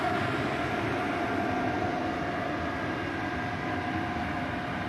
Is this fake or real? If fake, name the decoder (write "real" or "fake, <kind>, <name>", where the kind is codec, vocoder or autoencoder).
real